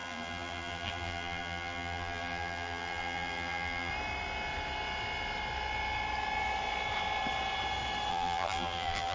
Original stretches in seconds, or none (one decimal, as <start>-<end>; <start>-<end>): 3.9-8.1